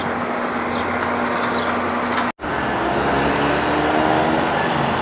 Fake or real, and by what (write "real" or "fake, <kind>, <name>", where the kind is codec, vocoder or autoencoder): real